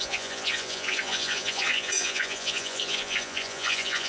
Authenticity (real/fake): fake